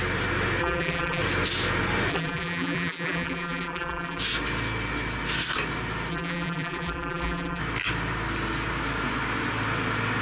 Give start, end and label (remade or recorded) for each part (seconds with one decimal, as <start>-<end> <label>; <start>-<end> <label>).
0.0-0.6 recorded; 0.6-1.2 remade; 1.2-2.1 recorded; 2.1-4.2 remade; 4.2-6.1 recorded; 6.1-7.6 remade; 7.6-10.2 recorded

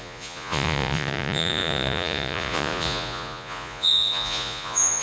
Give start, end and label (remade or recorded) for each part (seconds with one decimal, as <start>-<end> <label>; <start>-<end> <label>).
0.0-5.0 remade

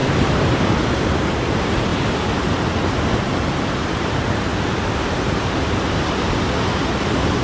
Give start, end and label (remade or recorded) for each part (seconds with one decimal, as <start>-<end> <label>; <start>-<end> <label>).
0.0-1.9 remade; 1.9-3.6 recorded; 3.6-4.5 remade; 4.5-5.1 recorded; 5.1-7.4 remade